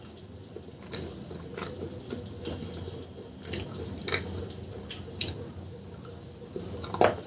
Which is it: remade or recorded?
recorded